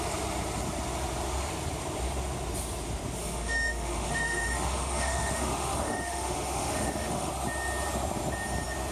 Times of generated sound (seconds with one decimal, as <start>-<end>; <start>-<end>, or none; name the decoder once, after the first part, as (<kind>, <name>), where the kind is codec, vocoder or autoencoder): 3.2-7.3 (autoencoder, DAC-VAE)